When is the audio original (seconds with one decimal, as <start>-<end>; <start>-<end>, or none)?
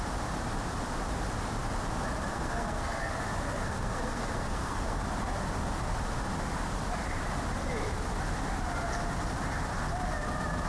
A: 0.0-2.3; 3.1-3.5; 5.0-10.7